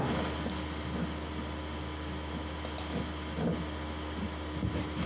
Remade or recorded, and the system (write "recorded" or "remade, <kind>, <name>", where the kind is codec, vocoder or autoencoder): recorded